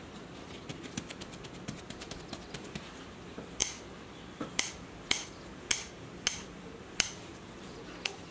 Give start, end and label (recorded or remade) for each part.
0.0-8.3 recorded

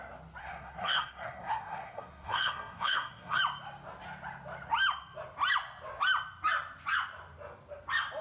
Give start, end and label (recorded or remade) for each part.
0.0-0.4 recorded; 0.4-3.4 remade; 3.4-8.2 recorded

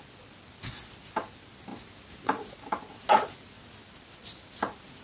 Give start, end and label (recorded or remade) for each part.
0.0-5.0 recorded

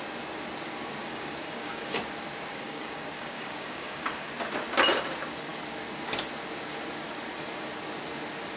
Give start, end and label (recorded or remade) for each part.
0.0-1.0 recorded; 1.0-2.0 remade; 2.0-2.5 recorded; 2.5-4.3 remade; 4.3-8.6 recorded

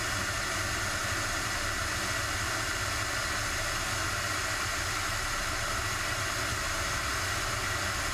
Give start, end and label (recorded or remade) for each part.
0.0-8.1 recorded

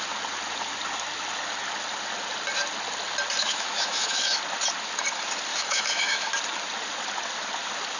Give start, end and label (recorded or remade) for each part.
0.0-3.4 recorded; 3.4-4.4 remade; 4.4-5.5 recorded; 5.5-6.3 remade; 6.3-8.0 recorded

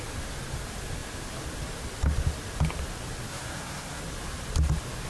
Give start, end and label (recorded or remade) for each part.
0.0-3.3 recorded; 3.3-4.0 remade; 4.0-5.1 recorded

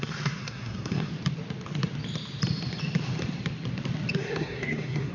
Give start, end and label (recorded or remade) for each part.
0.0-1.1 remade; 1.1-4.2 recorded; 4.2-5.1 remade